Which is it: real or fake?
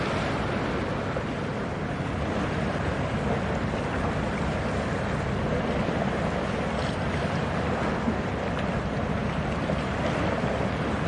real